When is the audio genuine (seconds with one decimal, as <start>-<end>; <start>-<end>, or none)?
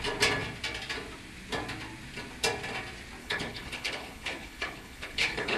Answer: 0.0-3.2